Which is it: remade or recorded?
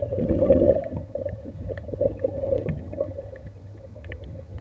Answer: remade